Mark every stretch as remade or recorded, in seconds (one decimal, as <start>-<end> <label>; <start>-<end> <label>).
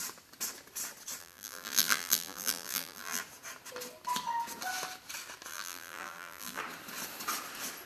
0.0-1.2 recorded; 1.2-3.2 remade; 3.2-5.5 recorded; 5.5-6.6 remade; 6.6-7.9 recorded